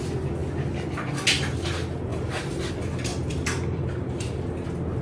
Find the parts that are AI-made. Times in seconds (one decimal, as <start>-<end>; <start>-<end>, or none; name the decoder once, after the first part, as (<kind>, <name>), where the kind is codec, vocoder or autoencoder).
2.1-2.7 (vocoder, BigVGAN v2); 3.1-4.4